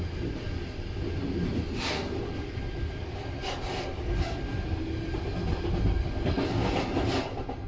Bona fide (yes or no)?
yes